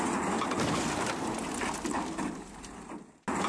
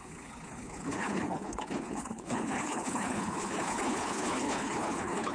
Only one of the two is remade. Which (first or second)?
second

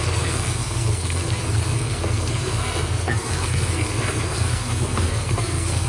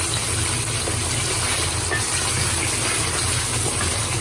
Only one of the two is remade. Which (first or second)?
first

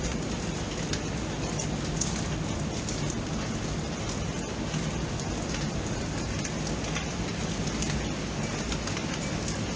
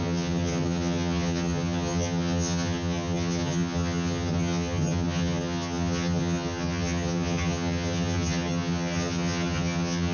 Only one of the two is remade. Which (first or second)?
second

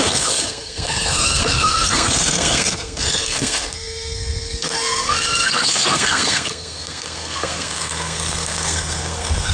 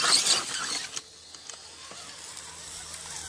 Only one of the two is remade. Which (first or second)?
first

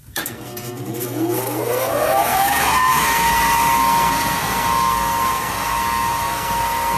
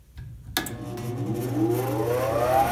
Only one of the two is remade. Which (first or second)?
first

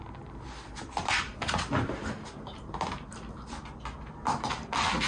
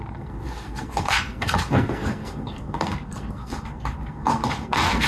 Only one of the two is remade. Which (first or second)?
second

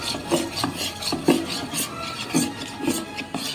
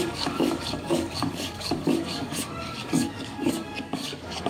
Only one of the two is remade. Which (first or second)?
second